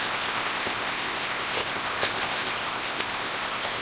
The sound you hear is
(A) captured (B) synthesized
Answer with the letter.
B